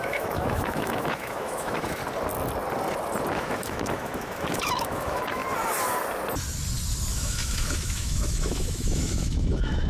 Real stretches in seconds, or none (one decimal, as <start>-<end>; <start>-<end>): 2.0-3.3; 5.4-7.1